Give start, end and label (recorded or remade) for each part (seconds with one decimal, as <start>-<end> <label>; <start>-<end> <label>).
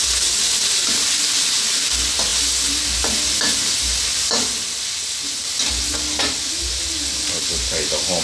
0.0-8.2 recorded